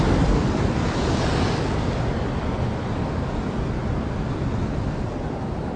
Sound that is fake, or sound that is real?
real